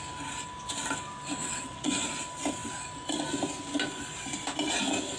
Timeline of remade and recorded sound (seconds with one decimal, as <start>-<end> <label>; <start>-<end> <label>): 0.0-1.4 recorded; 1.4-1.9 remade; 1.9-5.2 recorded